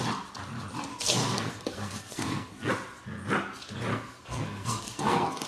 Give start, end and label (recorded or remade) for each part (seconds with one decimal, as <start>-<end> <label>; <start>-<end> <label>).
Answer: 0.0-0.9 recorded; 0.9-2.7 remade; 2.7-3.9 recorded; 3.9-5.5 remade